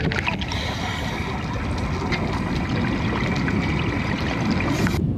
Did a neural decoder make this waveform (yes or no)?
no